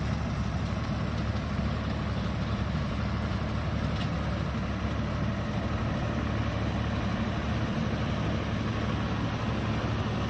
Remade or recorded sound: recorded